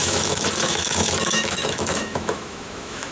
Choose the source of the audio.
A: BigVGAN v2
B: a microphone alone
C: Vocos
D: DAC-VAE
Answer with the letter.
D